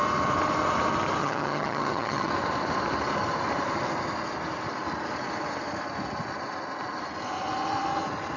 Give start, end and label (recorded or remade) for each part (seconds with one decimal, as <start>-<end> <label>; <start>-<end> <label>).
0.0-1.2 recorded; 1.2-2.3 remade; 2.3-8.4 recorded